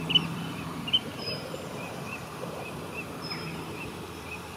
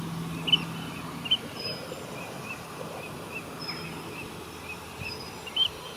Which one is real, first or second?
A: second